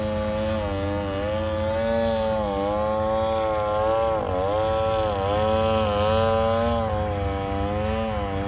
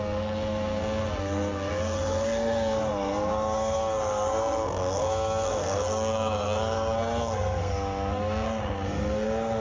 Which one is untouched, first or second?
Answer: first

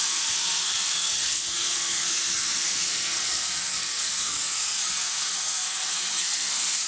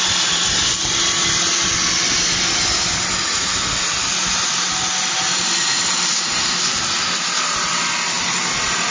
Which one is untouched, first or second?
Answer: second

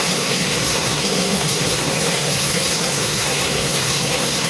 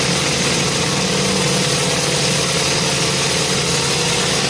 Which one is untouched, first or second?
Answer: second